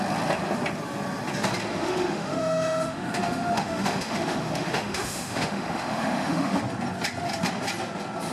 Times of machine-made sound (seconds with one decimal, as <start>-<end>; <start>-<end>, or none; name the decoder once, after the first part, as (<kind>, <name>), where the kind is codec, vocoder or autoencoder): 1.7-6.6 (autoencoder, DAC-VAE)